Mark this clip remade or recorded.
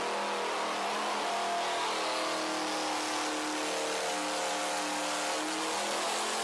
recorded